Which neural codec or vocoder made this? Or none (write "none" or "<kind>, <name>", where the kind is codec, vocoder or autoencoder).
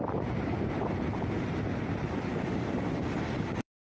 vocoder, BigVGAN v2